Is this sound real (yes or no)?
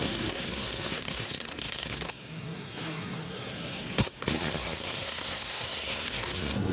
no